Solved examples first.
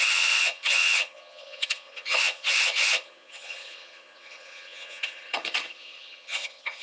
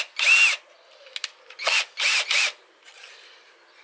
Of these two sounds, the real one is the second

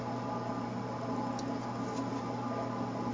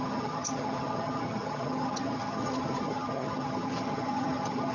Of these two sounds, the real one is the first